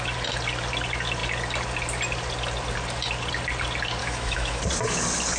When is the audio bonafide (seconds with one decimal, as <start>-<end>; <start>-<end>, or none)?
0.0-4.0; 4.6-5.4